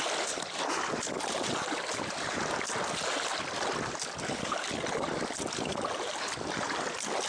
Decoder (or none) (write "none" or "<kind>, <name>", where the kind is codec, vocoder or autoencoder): none